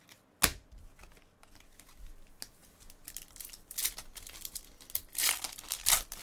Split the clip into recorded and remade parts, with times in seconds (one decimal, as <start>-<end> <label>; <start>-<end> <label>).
0.0-6.2 recorded